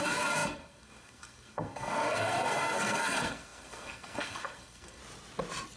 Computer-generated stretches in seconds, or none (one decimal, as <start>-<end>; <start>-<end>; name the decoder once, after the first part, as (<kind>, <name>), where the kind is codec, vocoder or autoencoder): 0.0-5.0 (codec, SNAC)